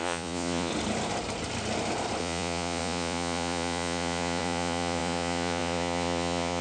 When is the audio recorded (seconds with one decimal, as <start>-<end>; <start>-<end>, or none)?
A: 0.7-2.2